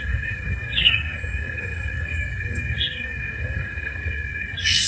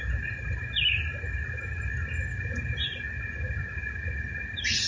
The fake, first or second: first